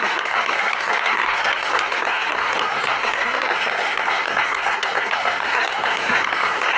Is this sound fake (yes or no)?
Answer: yes